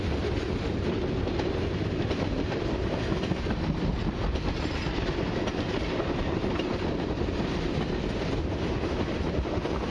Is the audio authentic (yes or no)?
yes